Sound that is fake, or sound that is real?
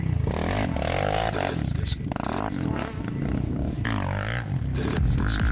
real